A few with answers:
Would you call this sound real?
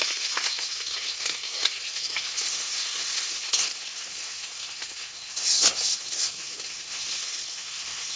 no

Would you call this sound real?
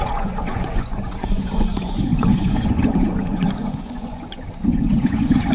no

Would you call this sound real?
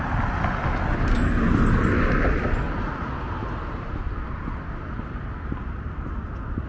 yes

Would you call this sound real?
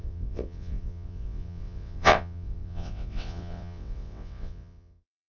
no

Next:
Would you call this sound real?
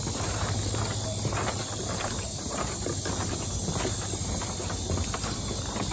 yes